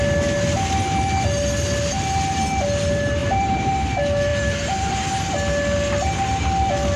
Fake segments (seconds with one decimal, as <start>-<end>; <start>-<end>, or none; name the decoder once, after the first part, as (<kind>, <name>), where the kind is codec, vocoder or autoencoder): 3.2-3.7 (vocoder, BigVGAN v2); 4.3-5.1